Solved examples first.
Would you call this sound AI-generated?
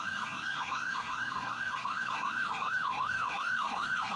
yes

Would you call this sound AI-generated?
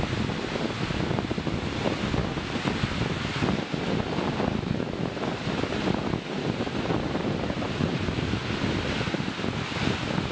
no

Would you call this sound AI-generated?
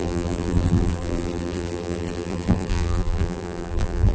yes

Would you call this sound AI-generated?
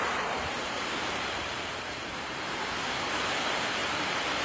yes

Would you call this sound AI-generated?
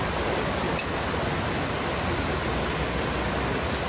no